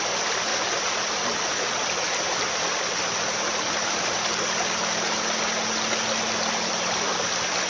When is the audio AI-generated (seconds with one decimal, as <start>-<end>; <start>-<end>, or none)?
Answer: none